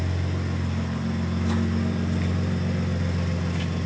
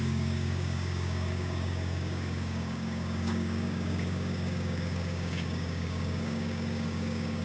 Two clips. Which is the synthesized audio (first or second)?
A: second